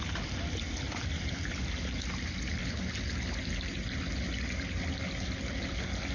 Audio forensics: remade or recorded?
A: recorded